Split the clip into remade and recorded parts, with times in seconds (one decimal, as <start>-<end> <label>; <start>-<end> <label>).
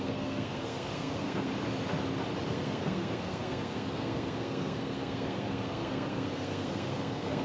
0.0-1.5 remade; 1.5-2.5 recorded; 2.5-7.4 remade